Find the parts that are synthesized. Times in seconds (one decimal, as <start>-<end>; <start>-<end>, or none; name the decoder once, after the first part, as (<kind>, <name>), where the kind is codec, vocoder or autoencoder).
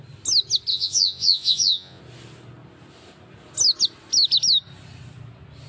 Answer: 0.7-2.0 (vocoder, Vocos)